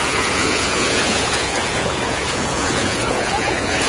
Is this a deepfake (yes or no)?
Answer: yes